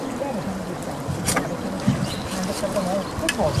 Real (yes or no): yes